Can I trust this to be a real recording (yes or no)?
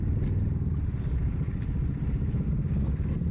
yes